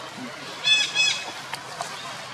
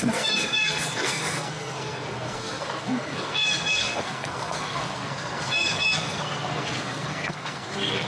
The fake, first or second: second